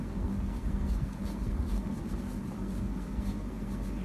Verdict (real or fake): fake